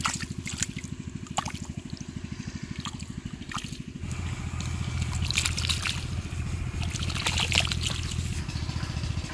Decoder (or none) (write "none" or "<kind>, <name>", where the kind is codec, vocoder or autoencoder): none